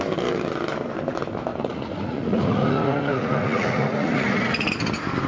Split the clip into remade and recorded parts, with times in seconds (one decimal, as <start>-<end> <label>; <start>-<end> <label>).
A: 0.0-1.5 recorded; 1.5-4.7 remade; 4.7-5.3 recorded

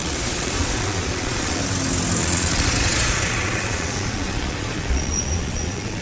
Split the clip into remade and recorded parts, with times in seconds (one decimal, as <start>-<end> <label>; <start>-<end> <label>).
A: 0.0-1.6 remade; 1.6-2.2 recorded; 2.2-6.0 remade

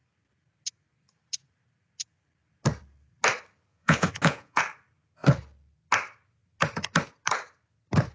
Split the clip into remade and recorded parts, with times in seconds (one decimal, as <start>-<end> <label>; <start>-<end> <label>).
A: 0.0-3.7 recorded; 3.7-4.6 remade; 4.6-8.1 recorded

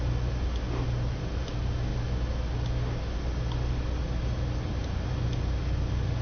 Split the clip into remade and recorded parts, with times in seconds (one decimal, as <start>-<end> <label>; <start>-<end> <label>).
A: 0.0-6.2 recorded